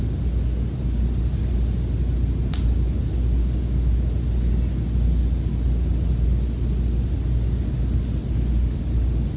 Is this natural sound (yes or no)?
yes